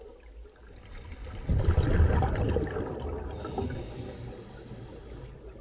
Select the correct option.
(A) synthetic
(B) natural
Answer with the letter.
B